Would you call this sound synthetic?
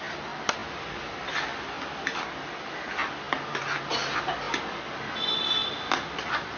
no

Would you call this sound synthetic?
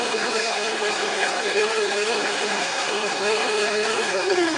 yes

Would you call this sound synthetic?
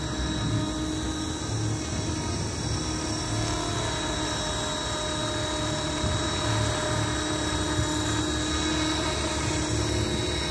no